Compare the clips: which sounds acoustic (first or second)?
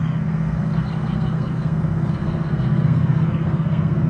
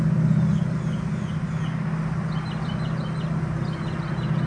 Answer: second